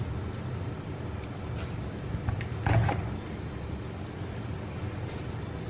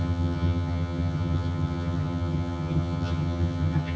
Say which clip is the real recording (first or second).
first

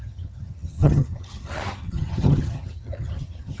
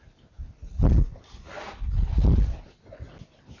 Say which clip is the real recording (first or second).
second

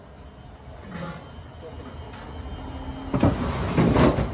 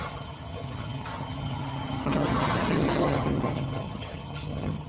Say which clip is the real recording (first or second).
first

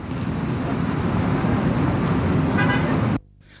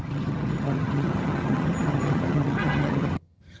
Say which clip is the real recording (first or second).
first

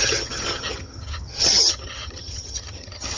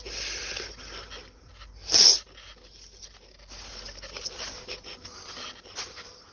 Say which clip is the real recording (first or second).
second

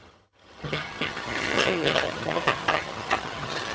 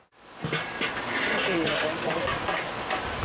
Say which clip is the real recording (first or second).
second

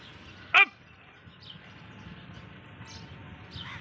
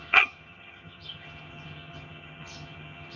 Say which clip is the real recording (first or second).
first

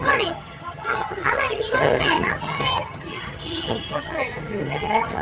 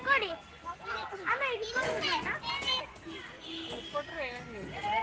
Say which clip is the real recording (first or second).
second